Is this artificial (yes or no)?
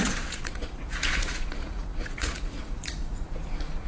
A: yes